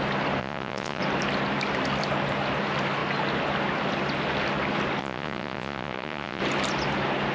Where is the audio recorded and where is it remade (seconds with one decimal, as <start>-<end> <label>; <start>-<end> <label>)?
0.0-0.4 recorded; 0.4-1.0 remade; 1.0-5.0 recorded; 5.0-6.4 remade; 6.4-7.3 recorded